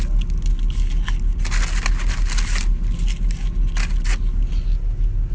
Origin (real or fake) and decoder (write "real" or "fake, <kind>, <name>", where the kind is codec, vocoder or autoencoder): real